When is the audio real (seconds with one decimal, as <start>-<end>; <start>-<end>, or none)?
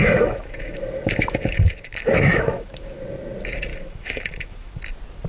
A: 3.0-3.7; 4.8-5.3